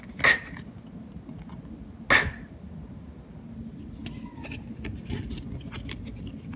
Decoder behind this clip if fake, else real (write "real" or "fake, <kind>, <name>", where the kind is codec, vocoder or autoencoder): real